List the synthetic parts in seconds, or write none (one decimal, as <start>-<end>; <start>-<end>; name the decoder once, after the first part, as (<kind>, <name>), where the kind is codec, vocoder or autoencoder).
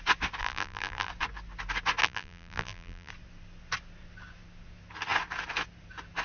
0.4-1.1 (vocoder, BigVGAN v2); 2.0-3.1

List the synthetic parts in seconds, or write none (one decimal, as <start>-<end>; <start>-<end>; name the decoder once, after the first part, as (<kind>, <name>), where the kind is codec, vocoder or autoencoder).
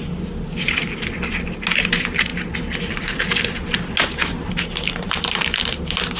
none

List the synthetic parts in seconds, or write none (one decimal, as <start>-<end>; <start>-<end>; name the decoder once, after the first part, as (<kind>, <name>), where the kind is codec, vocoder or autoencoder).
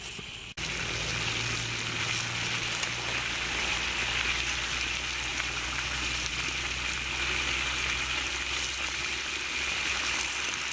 5.3-6.3 (vocoder, BigVGAN v2)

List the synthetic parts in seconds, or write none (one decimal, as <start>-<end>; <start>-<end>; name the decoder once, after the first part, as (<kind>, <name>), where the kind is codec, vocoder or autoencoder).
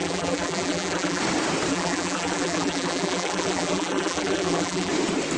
0.0-1.2 (vocoder, BigVGAN v2); 1.7-4.9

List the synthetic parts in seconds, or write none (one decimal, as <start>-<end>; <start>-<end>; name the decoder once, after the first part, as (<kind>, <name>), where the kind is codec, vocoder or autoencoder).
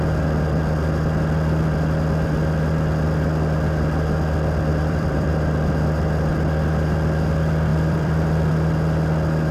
4.7-5.3 (vocoder, BigVGAN v2); 7.7-8.5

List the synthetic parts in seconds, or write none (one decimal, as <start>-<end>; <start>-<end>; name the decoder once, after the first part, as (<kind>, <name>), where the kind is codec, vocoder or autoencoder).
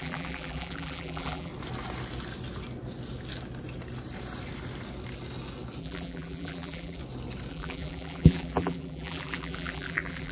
0.0-1.5 (vocoder, BigVGAN v2); 5.8-7.0; 7.5-10.3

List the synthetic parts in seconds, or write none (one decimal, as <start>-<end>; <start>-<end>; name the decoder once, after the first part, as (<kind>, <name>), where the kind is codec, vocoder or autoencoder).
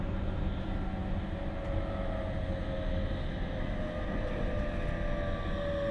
none